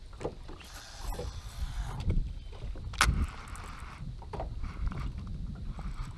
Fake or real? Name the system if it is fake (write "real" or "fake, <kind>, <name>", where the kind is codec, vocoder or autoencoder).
real